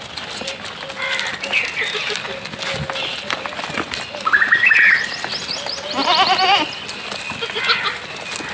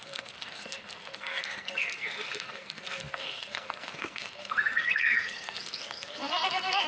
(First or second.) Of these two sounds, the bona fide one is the first